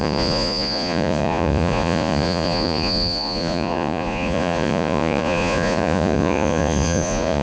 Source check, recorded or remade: remade